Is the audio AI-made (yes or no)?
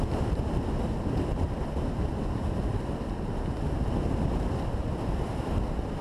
no